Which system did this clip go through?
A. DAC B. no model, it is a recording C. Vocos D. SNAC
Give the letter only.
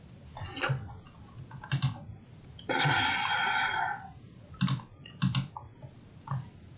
B